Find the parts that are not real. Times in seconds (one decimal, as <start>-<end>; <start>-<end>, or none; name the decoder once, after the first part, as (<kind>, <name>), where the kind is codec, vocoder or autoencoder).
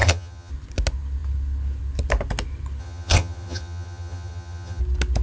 0.0-0.5 (vocoder, HiFi-GAN); 2.8-4.8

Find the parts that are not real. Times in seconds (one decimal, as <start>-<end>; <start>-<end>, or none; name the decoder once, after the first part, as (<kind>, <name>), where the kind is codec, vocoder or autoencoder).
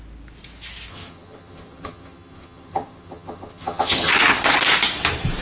0.9-4.1 (vocoder, HiFi-GAN)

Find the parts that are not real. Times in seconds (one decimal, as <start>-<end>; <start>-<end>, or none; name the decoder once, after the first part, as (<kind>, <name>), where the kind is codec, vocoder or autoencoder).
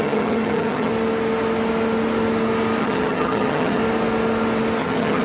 0.0-0.9 (vocoder, HiFi-GAN); 2.8-3.8; 4.8-5.2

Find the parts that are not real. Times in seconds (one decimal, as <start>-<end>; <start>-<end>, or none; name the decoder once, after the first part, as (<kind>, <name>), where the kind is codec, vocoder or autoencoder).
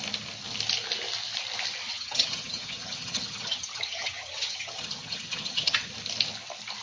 1.8-5.9 (vocoder, HiFi-GAN)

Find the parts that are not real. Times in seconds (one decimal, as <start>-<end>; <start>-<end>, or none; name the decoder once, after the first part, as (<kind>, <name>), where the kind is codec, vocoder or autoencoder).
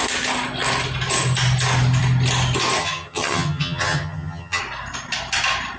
2.8-4.6 (vocoder, HiFi-GAN)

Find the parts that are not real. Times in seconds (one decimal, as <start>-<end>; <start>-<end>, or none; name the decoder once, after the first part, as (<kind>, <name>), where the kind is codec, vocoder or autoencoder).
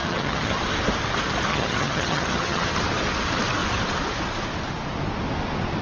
0.0-0.6 (vocoder, HiFi-GAN); 1.5-2.7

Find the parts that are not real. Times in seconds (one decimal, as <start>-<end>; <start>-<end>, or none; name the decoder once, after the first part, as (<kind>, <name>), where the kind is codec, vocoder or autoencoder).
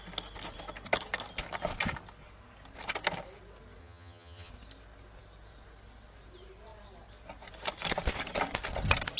3.8-4.5 (vocoder, HiFi-GAN)